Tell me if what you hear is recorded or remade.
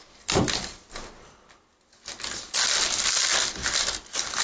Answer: recorded